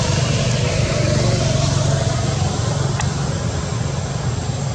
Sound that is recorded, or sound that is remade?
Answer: recorded